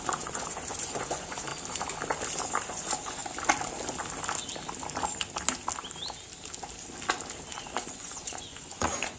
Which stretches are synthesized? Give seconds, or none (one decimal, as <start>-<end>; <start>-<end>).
0.0-1.5; 2.7-3.2; 7.5-9.2